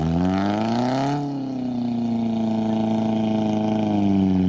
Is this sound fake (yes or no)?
no